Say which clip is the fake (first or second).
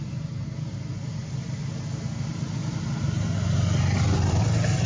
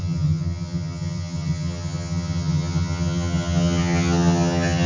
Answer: second